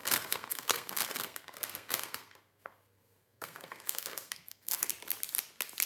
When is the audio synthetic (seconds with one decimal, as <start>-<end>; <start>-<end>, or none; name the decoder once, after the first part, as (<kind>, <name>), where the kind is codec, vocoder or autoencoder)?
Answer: 0.0-4.9 (codec, SNAC)